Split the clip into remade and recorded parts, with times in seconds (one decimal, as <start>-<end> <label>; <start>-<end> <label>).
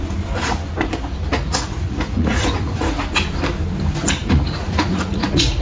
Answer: 0.0-1.3 recorded; 1.3-3.0 remade; 3.0-4.2 recorded; 4.2-5.6 remade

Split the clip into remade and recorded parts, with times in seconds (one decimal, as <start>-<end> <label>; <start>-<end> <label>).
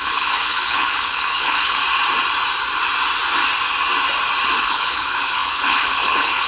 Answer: 0.0-1.8 remade; 1.8-4.6 recorded; 4.6-6.5 remade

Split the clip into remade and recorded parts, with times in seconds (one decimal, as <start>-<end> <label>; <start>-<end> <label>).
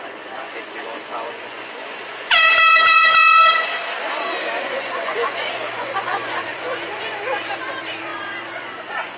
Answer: 0.0-3.7 remade; 3.7-4.6 recorded; 4.6-9.2 remade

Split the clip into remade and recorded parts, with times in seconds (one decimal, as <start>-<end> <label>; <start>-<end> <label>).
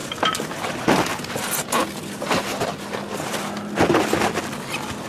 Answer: 0.0-1.3 remade; 1.3-5.1 recorded